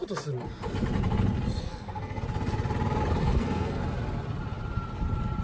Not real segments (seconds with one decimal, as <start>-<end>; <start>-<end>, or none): 1.6-2.2; 3.2-3.8